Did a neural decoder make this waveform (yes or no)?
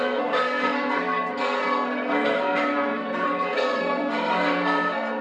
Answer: yes